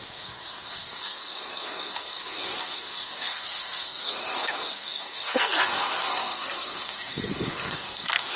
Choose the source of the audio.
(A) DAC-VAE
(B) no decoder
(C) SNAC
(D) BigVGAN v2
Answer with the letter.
C